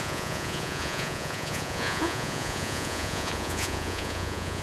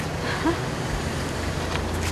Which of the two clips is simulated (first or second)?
first